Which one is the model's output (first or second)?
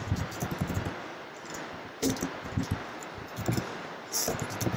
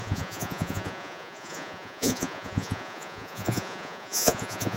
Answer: second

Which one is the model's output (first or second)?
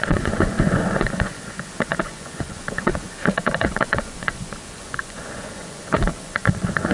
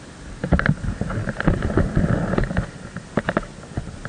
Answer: first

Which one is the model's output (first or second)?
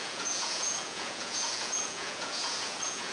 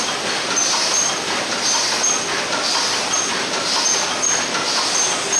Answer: first